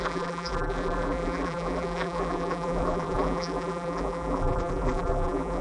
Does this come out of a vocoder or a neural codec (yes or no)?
yes